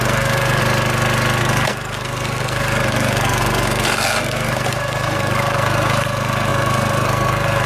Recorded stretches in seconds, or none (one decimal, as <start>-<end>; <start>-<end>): 0.6-1.4

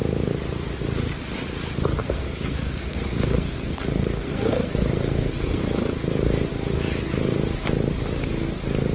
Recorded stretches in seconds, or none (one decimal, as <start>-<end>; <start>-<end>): 0.0-2.0; 5.6-8.9

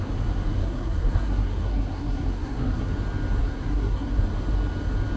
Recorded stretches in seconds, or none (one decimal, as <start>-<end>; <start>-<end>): 0.0-0.6; 2.9-3.4; 4.2-5.2

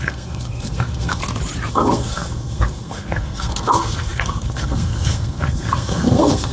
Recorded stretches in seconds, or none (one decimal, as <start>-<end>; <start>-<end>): 1.2-1.7

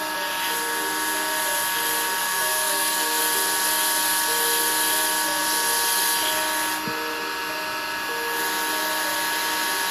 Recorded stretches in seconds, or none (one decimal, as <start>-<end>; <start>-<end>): 0.0-2.2; 3.2-9.9

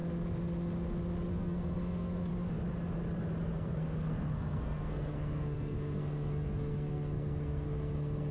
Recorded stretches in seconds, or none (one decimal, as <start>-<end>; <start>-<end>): 0.0-1.3; 2.3-3.4

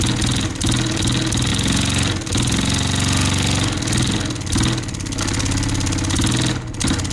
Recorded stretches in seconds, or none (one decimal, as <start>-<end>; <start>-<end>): 0.0-7.1

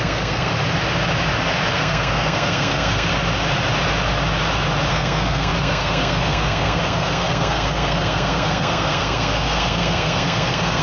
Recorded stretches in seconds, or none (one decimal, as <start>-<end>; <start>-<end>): 0.5-1.7; 3.1-4.9